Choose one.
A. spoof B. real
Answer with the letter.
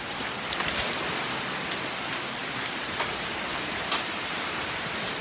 B